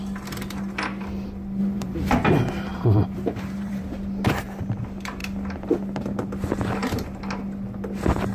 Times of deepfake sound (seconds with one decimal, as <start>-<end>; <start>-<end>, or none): 1.6-2.1; 2.7-3.8